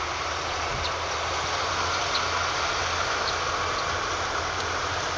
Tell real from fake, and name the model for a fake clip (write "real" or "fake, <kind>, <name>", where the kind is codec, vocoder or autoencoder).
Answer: real